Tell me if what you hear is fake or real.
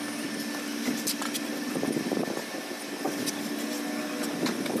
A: real